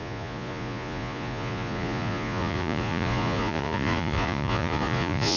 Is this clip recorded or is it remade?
remade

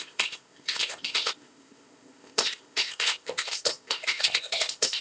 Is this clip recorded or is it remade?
remade